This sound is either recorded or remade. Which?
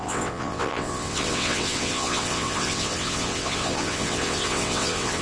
remade